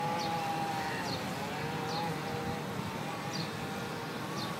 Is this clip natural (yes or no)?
yes